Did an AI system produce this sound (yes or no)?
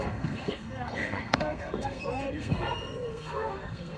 yes